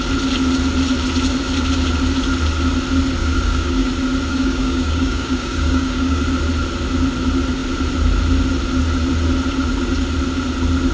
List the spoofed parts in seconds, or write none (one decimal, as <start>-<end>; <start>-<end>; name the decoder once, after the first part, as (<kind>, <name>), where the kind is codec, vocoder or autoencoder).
3.2-3.9 (codec, DAC); 4.3-6.2